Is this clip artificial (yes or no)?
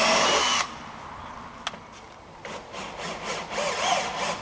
no